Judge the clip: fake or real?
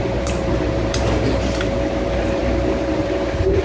fake